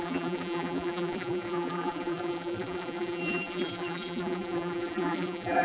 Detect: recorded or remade remade